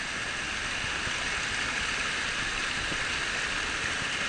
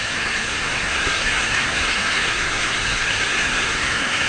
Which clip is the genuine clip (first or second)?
first